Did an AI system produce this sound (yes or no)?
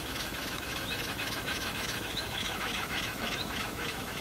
yes